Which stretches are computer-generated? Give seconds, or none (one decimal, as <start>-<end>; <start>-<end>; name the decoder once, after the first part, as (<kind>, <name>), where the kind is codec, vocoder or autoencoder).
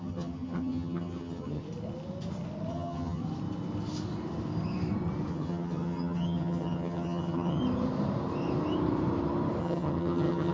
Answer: 0.0-1.6 (vocoder, HiFi-GAN); 2.7-3.2; 5.3-7.6; 9.6-10.5